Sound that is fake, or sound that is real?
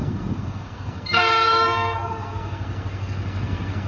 fake